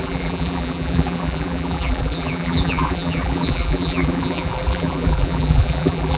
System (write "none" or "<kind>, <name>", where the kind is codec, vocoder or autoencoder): vocoder, BigVGAN v2